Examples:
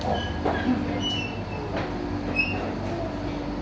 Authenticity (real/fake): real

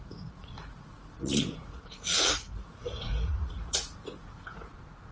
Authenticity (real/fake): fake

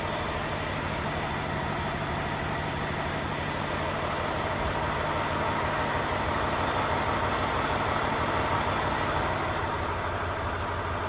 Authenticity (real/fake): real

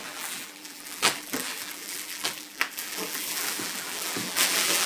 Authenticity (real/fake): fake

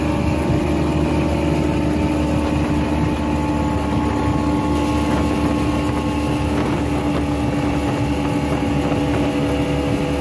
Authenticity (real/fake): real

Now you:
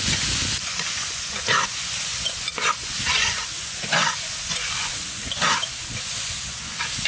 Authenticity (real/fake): fake